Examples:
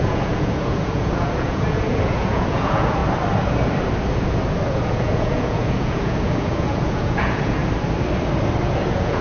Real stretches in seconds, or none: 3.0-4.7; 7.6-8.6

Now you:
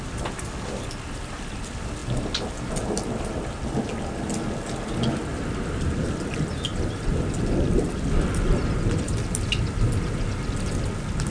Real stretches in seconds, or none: 0.0-11.3

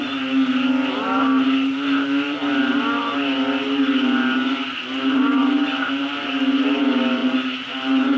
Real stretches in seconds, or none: 0.0-7.2; 7.7-8.2

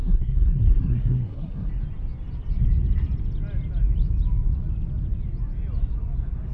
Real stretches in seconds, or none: 1.7-6.5

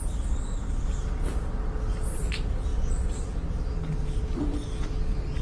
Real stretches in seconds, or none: 0.0-5.4

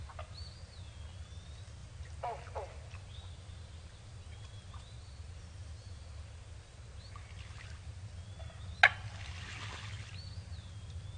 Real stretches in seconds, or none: 0.0-11.2

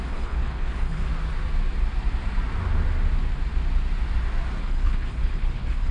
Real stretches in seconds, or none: 1.1-4.6